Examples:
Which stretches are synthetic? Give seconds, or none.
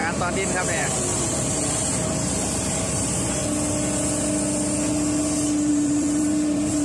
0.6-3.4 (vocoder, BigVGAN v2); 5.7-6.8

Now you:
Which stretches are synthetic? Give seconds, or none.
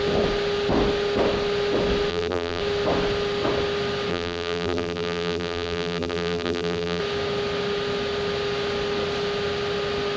2.1-2.6 (vocoder, BigVGAN v2); 4.1-7.0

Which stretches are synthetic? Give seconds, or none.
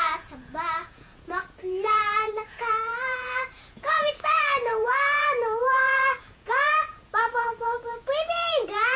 0.0-9.0 (vocoder, Vocos)